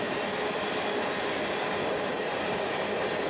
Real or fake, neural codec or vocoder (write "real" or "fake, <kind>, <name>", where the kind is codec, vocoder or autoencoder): real